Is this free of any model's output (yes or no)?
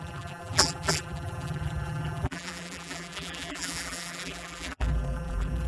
no